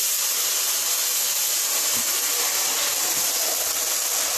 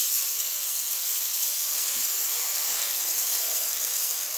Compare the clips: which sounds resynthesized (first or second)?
second